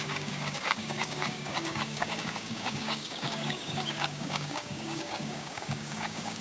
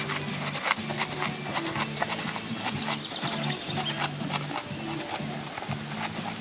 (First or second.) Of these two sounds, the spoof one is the first